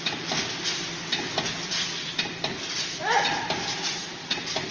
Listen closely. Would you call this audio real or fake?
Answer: real